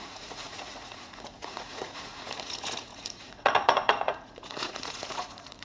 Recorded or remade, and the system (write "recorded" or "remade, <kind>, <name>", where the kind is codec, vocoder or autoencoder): remade, vocoder, Vocos